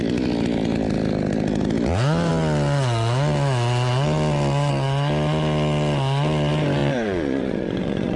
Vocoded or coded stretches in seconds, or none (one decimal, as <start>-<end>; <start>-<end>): 6.8-8.2